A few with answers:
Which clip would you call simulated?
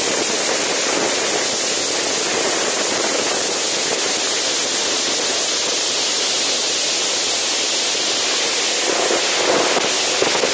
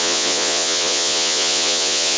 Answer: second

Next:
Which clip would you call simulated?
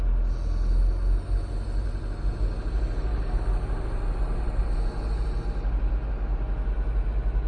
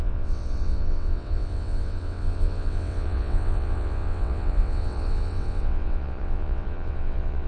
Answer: second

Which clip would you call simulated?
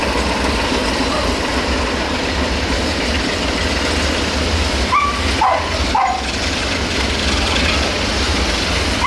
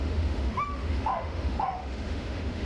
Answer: second